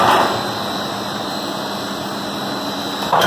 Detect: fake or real real